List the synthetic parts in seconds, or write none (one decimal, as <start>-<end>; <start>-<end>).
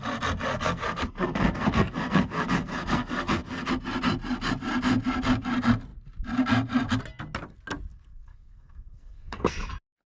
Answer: 0.5-3.7; 7.9-9.7